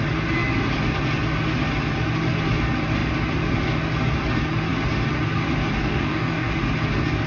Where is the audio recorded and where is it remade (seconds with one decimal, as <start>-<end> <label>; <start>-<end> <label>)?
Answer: 0.0-5.8 recorded; 5.8-6.5 remade; 6.5-7.3 recorded